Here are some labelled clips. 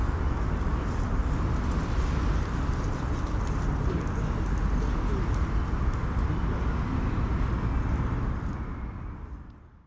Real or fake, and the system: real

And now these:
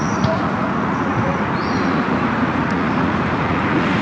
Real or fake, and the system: fake, vocoder, Vocos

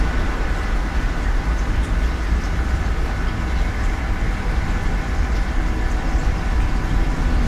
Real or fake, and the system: real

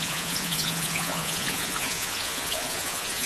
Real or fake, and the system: fake, vocoder, Vocos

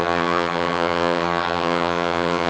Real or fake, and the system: fake, vocoder, HiFi-GAN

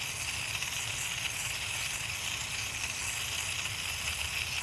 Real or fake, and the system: real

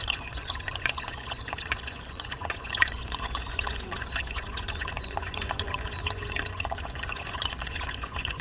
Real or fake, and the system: fake, vocoder, Vocos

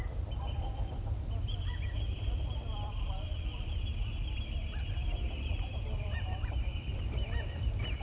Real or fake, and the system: fake, vocoder, BigVGAN v2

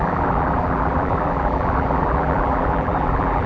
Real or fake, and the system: fake, vocoder, BigVGAN v2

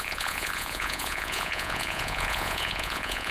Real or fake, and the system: fake, vocoder, Vocos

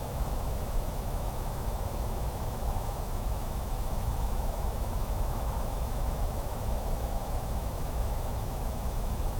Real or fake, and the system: fake, autoencoder, DAC-VAE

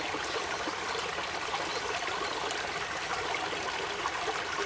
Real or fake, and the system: real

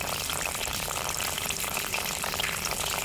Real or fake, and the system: fake, vocoder, BigVGAN v2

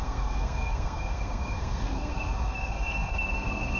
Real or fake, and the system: fake, codec, SNAC